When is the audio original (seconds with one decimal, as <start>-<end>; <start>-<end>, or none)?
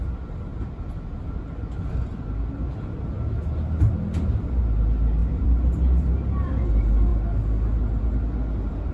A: 0.0-5.2; 6.1-8.9